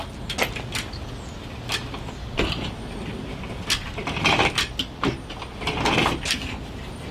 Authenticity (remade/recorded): recorded